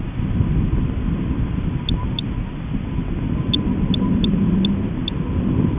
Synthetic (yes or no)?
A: no